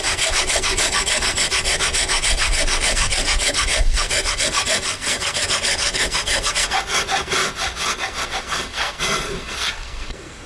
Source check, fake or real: fake